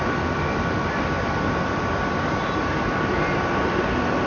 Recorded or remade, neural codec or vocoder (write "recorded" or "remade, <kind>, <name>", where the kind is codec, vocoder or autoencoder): remade, vocoder, BigVGAN v2